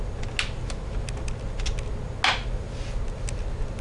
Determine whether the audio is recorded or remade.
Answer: recorded